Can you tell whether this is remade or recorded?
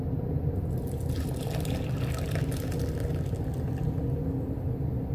recorded